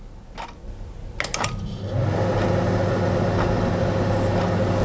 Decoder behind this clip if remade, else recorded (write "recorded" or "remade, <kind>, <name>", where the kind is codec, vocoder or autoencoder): recorded